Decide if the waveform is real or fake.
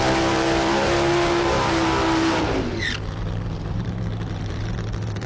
fake